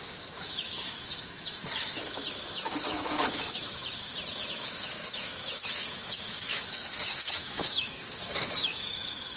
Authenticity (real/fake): fake